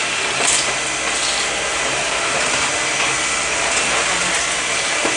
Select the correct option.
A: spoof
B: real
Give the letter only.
B